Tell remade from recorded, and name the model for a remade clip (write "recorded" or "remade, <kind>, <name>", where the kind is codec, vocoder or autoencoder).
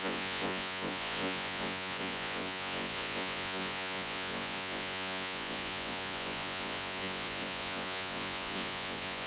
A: remade, vocoder, Vocos